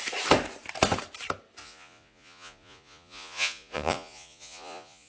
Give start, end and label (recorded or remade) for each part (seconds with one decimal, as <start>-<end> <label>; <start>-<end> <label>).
0.0-1.6 recorded; 1.6-5.1 remade